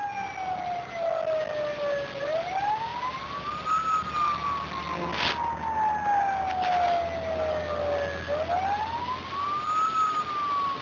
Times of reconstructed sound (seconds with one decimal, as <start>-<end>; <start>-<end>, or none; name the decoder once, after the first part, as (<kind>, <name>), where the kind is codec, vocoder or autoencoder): none